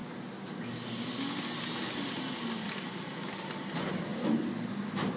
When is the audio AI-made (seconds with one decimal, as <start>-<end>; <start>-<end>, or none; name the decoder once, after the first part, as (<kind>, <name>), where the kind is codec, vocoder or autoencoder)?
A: none